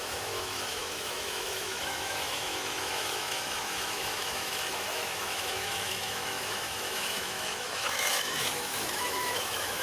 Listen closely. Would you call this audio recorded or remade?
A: remade